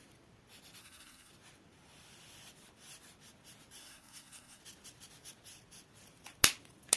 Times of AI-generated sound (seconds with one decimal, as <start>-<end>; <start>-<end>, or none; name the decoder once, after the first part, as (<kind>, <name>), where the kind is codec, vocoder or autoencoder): 0.8-1.3 (codec, SNAC); 3.8-4.6